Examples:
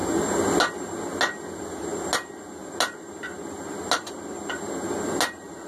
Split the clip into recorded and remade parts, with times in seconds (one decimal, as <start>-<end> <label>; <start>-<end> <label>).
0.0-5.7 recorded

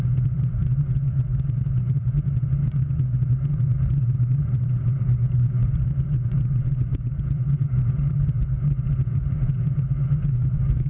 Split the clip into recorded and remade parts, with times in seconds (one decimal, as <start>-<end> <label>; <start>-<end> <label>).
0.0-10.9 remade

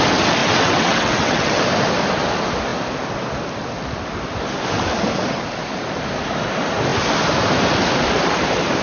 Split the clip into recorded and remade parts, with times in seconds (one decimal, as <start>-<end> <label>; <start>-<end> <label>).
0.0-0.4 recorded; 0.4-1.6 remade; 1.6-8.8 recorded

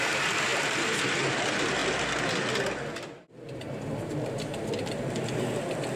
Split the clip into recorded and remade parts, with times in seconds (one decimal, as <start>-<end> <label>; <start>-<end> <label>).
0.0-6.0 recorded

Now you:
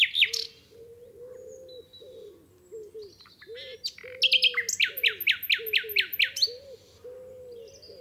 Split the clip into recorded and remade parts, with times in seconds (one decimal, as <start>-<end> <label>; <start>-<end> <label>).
0.0-8.0 recorded